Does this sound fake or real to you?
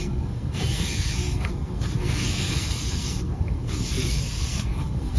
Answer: fake